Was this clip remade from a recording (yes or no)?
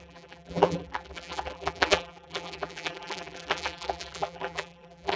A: yes